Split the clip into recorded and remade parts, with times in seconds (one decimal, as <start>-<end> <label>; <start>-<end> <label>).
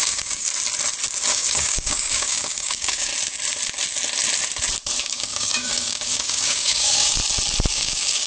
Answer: 0.0-0.5 remade; 0.5-1.3 recorded; 1.3-3.1 remade; 3.1-5.0 recorded; 5.0-7.2 remade; 7.2-7.7 recorded; 7.7-8.3 remade